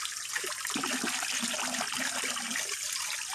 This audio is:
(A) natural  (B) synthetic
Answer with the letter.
A